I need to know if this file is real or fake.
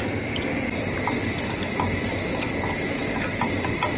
real